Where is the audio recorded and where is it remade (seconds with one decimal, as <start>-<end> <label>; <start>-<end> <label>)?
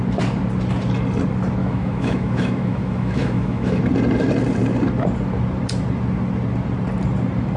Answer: 0.0-1.6 recorded; 1.6-3.8 remade; 3.8-7.6 recorded